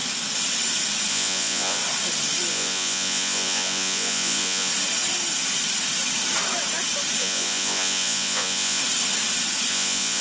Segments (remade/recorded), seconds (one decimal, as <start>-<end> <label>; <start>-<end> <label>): 0.0-1.1 recorded; 1.1-1.8 remade; 1.8-2.5 recorded; 2.5-4.7 remade; 4.7-7.2 recorded; 7.2-8.8 remade; 8.8-9.7 recorded; 9.7-10.2 remade